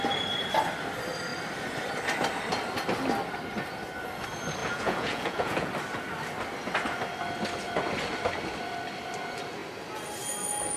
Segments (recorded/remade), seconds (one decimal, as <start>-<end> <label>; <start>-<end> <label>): 0.0-4.6 recorded; 4.6-5.7 remade; 5.7-10.8 recorded